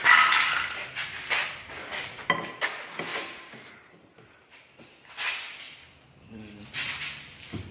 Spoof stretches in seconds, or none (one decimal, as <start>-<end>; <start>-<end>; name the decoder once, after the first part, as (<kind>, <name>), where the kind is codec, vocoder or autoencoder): 3.1-4.9 (vocoder, BigVGAN v2)